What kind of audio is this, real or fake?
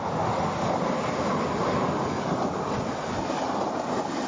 real